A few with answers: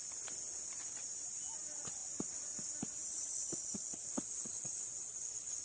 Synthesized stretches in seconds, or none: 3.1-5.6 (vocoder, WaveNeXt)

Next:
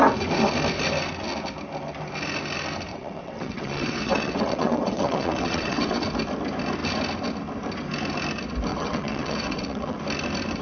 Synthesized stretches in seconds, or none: 2.9-6.0 (vocoder, WaveNeXt); 8.7-10.0

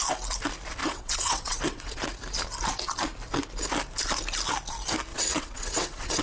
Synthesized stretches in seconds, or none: 0.8-2.1 (vocoder, WaveNeXt); 5.1-6.2

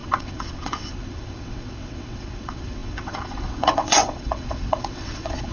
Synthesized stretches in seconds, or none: 0.0-5.5 (vocoder, WaveNeXt)

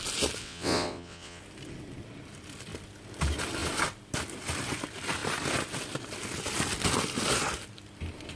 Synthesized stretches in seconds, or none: 0.4-1.4 (vocoder, WaveNeXt)

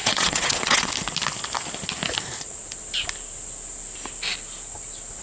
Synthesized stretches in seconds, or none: 0.0-0.9 (vocoder, WaveNeXt)

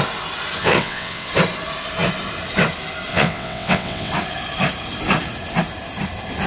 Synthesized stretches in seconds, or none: 0.6-1.3 (vocoder, WaveNeXt); 3.1-4.1

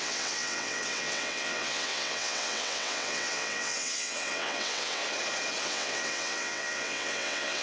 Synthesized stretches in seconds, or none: 0.0-5.0 (vocoder, WaveNeXt); 5.6-7.6